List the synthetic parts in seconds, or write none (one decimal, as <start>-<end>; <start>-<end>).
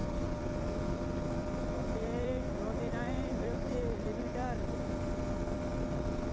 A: 0.0-2.3; 3.3-5.2